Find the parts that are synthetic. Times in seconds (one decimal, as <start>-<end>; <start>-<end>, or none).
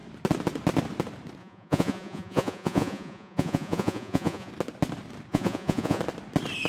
1.4-4.5; 5.3-6.0